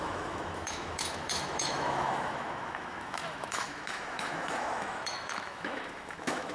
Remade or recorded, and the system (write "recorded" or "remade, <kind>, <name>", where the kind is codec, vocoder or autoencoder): remade, autoencoder, DAC-VAE